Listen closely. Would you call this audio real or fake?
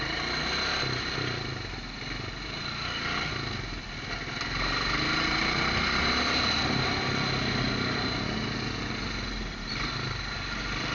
real